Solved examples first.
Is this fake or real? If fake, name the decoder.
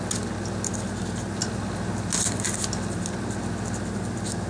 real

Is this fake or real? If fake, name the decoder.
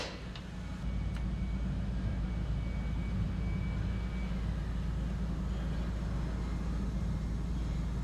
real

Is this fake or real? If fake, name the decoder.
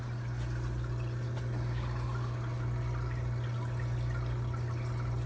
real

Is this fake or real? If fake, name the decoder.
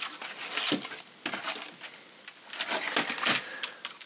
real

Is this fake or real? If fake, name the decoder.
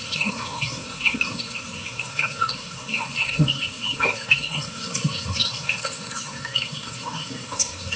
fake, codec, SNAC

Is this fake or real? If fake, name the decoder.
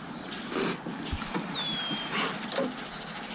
real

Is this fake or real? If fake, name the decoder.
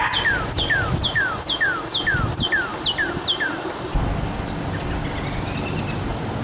real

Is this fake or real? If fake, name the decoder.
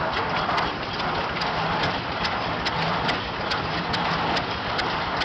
real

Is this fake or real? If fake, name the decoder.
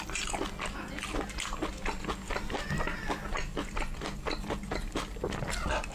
real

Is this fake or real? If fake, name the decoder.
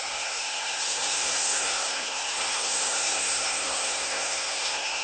fake, codec, SNAC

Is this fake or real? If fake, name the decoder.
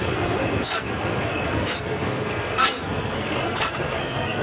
fake, codec, SNAC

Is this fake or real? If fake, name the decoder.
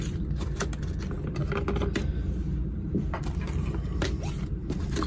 real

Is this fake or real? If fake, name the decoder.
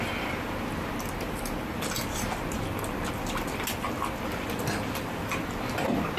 real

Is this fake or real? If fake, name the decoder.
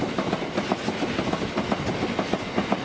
real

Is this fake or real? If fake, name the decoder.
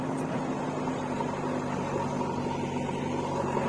real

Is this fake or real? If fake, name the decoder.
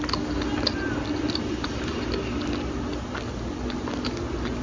real